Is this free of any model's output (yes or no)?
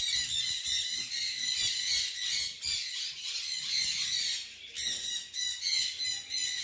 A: yes